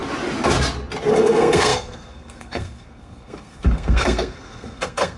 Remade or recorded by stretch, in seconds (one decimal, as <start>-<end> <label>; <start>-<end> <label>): 0.0-1.1 recorded; 1.1-5.2 remade